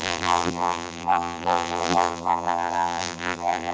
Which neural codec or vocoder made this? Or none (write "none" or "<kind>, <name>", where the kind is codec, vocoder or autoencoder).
vocoder, BigVGAN v2